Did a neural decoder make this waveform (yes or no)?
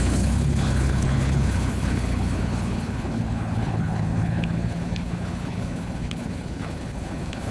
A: yes